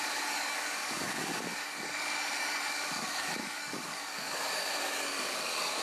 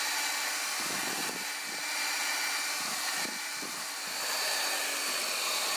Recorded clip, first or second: second